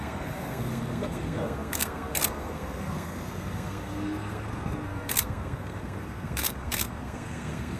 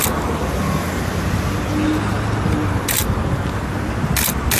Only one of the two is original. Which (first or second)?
second